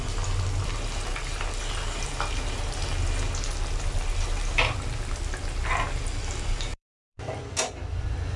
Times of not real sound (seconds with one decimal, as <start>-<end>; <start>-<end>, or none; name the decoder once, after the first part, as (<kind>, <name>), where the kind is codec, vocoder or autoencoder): 6.7-7.4 (vocoder, BigVGAN v2)